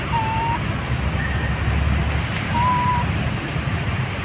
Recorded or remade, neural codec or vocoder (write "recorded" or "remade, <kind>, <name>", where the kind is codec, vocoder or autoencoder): recorded